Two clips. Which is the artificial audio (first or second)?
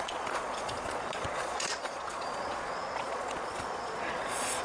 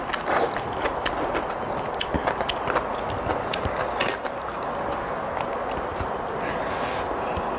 first